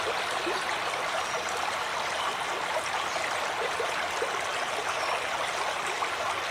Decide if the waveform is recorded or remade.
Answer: recorded